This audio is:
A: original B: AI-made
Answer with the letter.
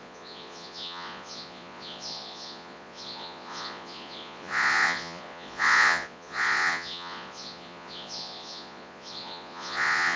B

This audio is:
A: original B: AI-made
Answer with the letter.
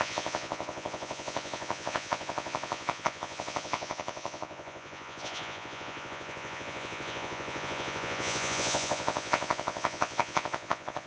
B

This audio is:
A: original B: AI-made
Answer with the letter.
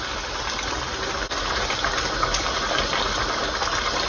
A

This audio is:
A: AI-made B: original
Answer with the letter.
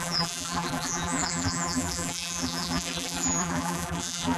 A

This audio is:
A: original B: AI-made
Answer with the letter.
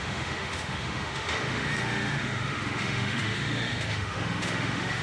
B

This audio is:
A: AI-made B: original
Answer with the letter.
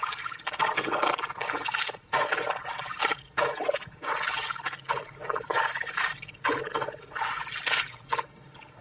B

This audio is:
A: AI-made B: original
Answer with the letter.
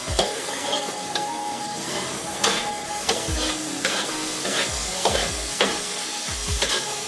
A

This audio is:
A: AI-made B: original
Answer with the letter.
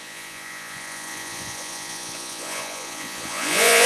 A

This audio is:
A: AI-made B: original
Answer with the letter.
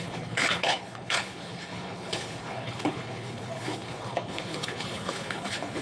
A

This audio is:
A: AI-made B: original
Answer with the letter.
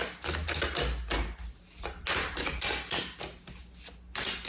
B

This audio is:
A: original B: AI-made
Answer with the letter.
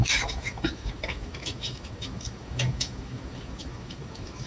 B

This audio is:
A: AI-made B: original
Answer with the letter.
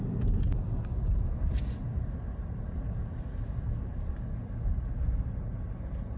B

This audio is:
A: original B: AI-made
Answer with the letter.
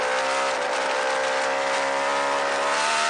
A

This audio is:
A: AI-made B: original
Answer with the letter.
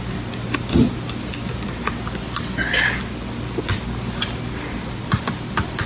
B